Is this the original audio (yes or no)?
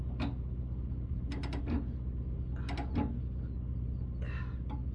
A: yes